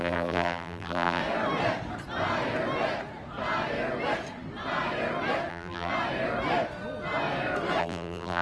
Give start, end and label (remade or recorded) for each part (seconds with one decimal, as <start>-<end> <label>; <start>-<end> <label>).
0.0-1.2 remade; 1.2-5.5 recorded; 5.5-5.9 remade; 5.9-7.8 recorded; 7.8-8.4 remade